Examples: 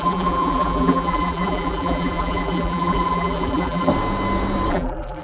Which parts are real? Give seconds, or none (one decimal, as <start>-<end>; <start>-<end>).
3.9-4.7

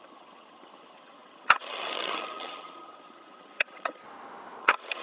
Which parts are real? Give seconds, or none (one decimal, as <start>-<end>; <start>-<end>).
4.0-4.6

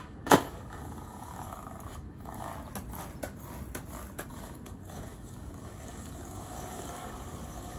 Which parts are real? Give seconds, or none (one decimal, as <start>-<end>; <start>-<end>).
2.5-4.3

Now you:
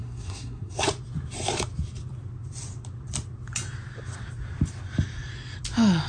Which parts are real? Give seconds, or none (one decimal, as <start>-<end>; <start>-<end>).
0.8-6.1

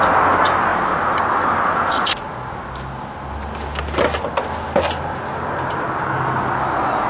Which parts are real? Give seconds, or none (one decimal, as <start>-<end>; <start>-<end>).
0.0-7.1